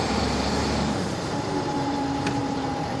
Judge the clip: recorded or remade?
remade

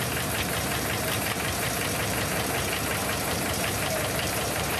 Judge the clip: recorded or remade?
remade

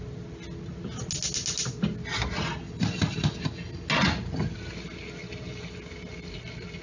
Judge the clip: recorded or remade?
recorded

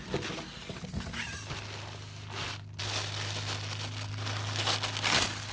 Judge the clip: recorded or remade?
recorded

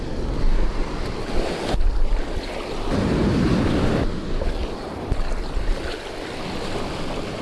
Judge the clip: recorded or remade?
recorded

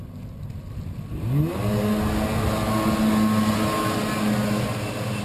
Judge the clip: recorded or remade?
recorded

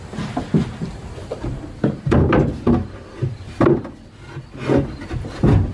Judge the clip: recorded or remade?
recorded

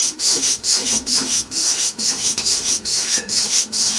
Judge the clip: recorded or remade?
remade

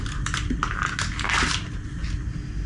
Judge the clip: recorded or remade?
recorded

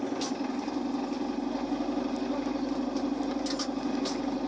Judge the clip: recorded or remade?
recorded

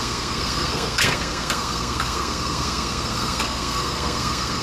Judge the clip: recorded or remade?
remade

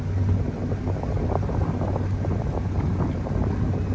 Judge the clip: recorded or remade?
recorded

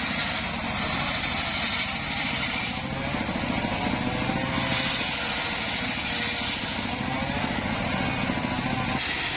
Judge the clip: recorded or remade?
recorded